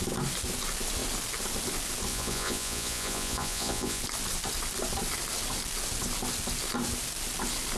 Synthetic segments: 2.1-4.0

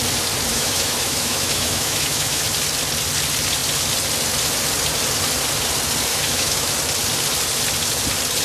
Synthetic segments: 0.5-2.4; 6.1-6.7

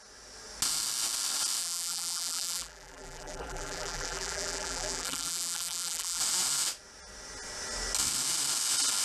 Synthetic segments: 1.6-6.2

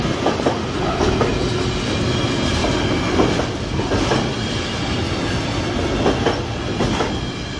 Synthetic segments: none

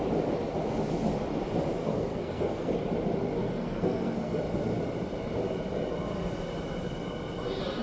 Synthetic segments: 1.8-2.7; 3.4-4.4

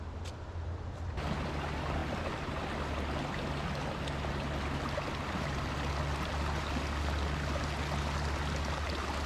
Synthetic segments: none

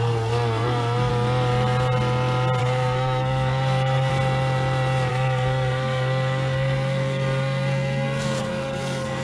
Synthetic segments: 0.0-1.1; 2.6-4.1; 5.1-9.2

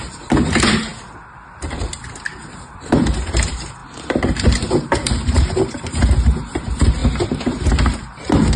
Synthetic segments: 0.0-0.9; 2.3-8.6